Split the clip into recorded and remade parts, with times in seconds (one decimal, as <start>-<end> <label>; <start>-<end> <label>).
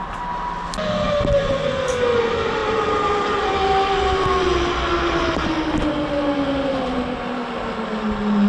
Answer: 0.0-8.5 recorded